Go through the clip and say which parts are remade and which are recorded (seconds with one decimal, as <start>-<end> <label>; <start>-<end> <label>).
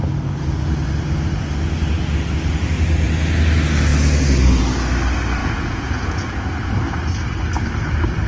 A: 0.0-5.4 recorded; 5.4-6.7 remade; 6.7-8.3 recorded